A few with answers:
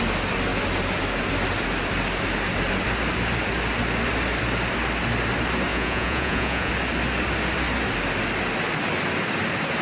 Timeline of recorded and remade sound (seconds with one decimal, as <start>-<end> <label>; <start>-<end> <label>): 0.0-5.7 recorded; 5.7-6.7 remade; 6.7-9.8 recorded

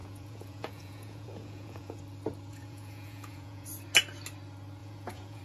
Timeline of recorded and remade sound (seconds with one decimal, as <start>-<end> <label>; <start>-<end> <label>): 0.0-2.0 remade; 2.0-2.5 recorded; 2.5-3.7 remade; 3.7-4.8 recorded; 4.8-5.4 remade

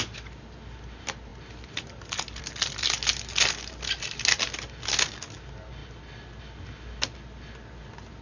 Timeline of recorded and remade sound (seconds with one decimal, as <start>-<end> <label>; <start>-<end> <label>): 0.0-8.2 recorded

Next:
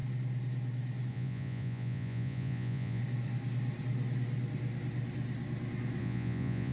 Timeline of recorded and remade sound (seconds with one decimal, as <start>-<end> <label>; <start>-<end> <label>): 0.0-1.1 recorded; 1.1-3.0 remade; 3.0-6.0 recorded; 6.0-6.7 remade

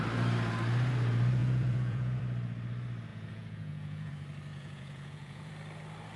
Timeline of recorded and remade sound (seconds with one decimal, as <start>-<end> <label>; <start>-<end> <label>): 0.0-1.4 recorded; 1.4-2.2 remade; 2.2-3.1 recorded; 3.1-4.1 remade; 4.1-4.5 recorded; 4.5-5.5 remade; 5.5-6.2 recorded

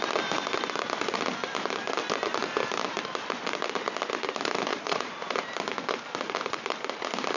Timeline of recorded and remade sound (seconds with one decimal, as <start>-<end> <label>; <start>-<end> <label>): 0.0-4.7 recorded; 4.7-5.3 remade; 5.3-7.4 recorded

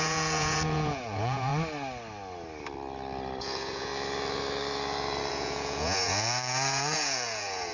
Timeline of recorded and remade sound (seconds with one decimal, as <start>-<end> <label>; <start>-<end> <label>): 0.0-1.5 remade; 1.5-3.4 recorded; 3.4-3.9 remade; 3.9-5.3 recorded; 5.3-7.7 remade

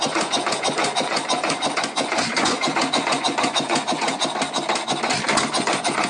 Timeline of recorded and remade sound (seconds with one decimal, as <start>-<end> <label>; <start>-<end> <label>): 0.0-4.2 remade; 4.2-5.5 recorded; 5.5-6.1 remade